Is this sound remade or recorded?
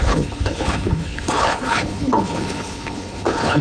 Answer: remade